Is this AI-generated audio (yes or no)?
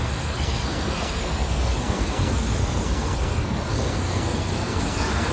yes